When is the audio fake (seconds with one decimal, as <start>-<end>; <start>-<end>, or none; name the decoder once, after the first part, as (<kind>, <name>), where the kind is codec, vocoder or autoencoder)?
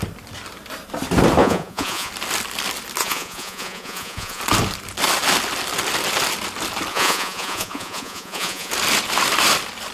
1.4-2.1 (vocoder, Vocos); 3.0-4.4; 6.9-8.7